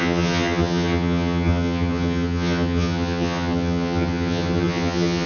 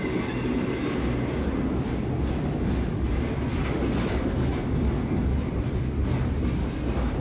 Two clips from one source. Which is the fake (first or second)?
first